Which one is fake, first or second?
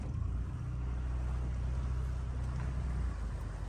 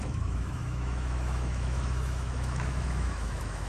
second